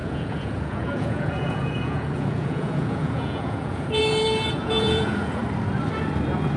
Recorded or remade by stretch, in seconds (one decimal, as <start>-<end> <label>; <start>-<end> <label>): 0.0-5.4 remade; 5.4-6.6 recorded